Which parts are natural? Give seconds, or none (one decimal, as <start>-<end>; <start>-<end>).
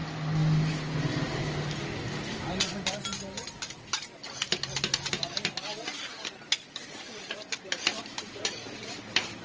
0.0-9.4